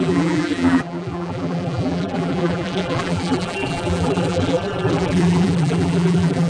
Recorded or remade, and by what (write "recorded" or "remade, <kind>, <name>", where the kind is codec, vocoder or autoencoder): remade, vocoder, BigVGAN v2